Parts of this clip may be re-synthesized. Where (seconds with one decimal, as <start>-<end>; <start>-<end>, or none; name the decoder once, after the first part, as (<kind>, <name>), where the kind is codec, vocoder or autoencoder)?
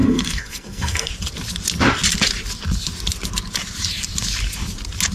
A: 0.0-1.1 (codec, SNAC)